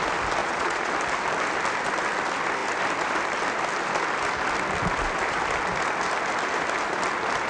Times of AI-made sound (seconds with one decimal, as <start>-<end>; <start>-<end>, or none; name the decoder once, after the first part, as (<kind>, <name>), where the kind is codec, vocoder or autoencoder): 0.4-0.9 (vocoder, Vocos)